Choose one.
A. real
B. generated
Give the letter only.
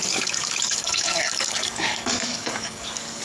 B